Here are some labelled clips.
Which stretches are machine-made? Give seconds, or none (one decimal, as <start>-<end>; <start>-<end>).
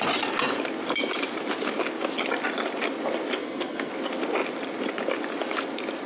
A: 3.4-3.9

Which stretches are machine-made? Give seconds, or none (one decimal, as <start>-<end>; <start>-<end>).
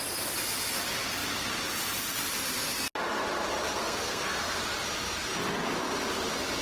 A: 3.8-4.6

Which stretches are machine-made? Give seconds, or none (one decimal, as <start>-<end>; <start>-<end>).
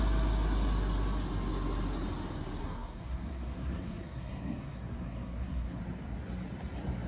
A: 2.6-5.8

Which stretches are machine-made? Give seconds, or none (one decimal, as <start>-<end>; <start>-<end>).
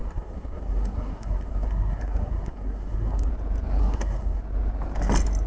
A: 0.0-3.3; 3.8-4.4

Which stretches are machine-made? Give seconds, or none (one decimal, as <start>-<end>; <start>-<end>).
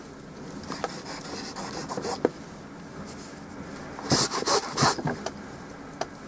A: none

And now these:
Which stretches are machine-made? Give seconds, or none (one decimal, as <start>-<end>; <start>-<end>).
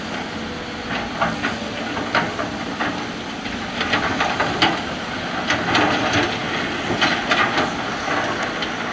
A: none